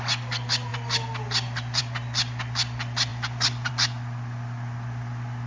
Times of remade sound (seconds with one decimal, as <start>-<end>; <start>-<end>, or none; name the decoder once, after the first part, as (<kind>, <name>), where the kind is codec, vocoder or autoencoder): 0.7-1.8 (vocoder, BigVGAN v2); 3.1-3.7